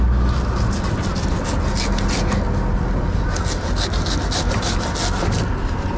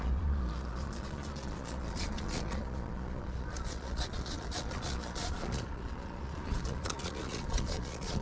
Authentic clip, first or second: first